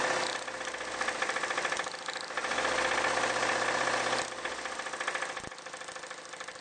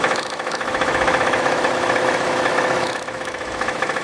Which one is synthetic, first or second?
second